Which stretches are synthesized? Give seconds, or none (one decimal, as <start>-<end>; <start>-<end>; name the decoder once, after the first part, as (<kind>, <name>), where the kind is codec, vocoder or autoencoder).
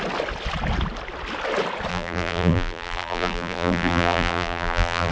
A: 1.9-5.1 (vocoder, BigVGAN v2)